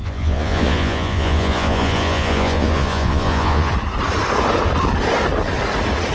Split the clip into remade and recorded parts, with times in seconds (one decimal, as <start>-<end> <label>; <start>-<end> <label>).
0.0-3.7 remade; 3.7-6.1 recorded